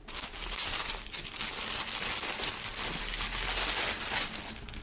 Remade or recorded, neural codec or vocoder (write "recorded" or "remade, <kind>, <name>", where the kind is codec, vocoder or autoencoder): recorded